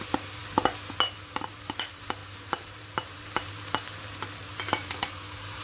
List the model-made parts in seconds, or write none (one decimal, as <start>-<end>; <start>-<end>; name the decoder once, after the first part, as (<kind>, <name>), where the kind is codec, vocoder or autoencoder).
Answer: 0.0-0.4 (vocoder, BigVGAN v2); 1.2-5.6